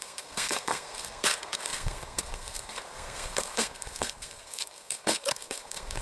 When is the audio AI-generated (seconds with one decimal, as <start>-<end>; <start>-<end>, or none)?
0.0-6.0